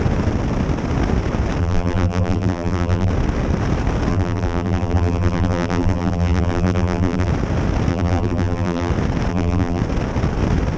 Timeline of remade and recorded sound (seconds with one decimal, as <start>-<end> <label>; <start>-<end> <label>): 0.0-1.6 recorded; 1.6-3.1 remade; 3.1-4.1 recorded; 4.1-7.3 remade; 7.3-7.9 recorded; 7.9-8.9 remade; 8.9-9.3 recorded; 9.3-9.8 remade; 9.8-10.8 recorded